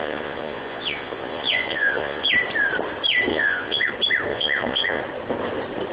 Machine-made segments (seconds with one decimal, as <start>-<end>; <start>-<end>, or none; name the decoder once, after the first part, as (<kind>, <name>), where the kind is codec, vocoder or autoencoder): 0.0-2.3 (vocoder, Vocos); 3.3-3.9; 4.3-5.0